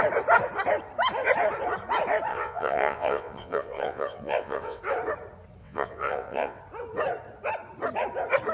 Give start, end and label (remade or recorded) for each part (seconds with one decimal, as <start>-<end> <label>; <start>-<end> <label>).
0.0-2.3 recorded; 2.3-4.8 remade; 4.8-5.6 recorded; 5.6-6.6 remade; 6.6-8.5 recorded